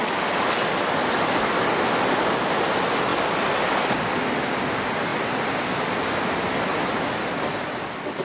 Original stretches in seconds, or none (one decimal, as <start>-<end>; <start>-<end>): 0.0-8.2